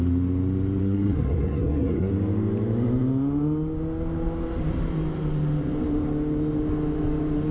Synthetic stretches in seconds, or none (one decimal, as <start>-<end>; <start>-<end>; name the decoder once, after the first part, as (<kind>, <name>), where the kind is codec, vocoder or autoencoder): 0.8-2.1 (codec, SNAC)